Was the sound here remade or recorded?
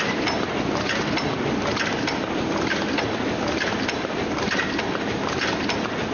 recorded